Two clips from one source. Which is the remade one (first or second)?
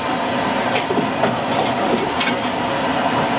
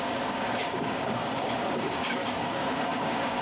second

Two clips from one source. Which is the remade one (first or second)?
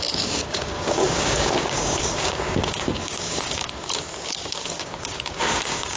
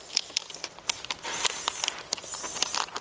first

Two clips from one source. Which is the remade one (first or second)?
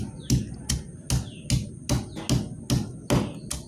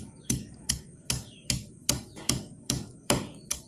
second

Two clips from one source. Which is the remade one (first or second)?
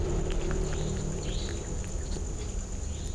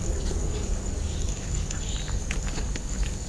second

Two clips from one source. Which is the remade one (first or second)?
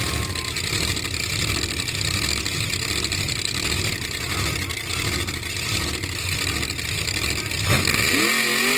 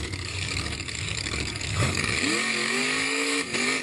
second